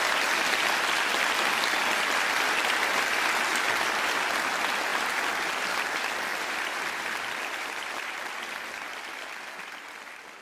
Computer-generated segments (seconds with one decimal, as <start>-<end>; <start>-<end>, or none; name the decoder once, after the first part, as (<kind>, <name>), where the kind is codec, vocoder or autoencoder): 6.3-8.7 (vocoder, BigVGAN v2)